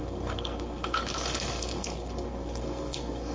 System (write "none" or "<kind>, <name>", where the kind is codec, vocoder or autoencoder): codec, SNAC